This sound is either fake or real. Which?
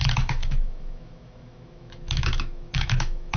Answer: fake